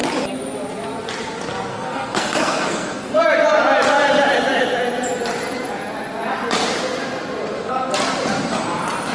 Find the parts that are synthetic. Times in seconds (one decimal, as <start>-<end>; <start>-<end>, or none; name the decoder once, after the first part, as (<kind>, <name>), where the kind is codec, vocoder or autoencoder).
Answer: 1.7-3.2 (codec, SNAC)